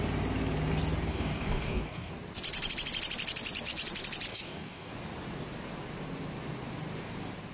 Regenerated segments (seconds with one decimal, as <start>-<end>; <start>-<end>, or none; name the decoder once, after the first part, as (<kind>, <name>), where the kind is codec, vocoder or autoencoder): 1.1-2.1 (codec, DAC); 4.3-4.9